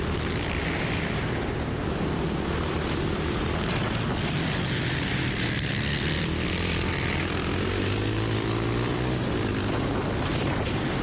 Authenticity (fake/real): fake